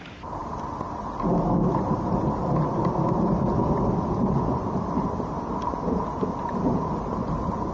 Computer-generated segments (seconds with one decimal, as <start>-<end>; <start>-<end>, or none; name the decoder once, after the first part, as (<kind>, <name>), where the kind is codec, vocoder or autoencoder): none